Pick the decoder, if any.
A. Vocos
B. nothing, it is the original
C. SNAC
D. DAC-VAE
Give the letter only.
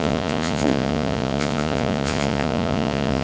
A